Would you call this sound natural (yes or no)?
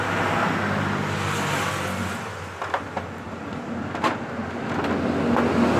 yes